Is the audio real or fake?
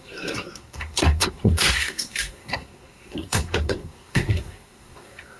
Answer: fake